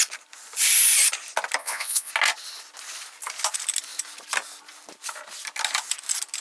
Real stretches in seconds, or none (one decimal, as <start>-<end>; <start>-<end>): 0.0-1.6; 2.1-6.4